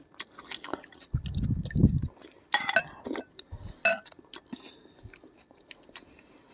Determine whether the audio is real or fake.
real